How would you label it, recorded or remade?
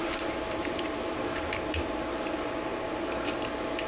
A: recorded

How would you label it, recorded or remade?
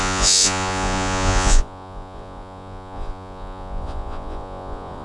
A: remade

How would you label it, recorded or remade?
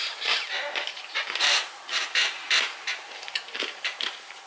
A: remade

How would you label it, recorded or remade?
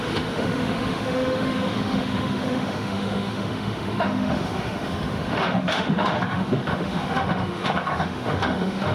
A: remade